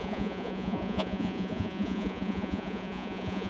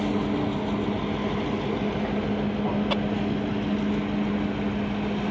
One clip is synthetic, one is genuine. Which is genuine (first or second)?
second